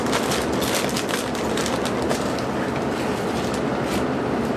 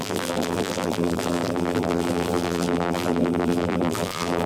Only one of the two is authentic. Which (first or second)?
first